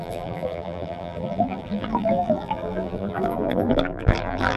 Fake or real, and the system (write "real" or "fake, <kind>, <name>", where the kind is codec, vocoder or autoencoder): fake, vocoder, BigVGAN v2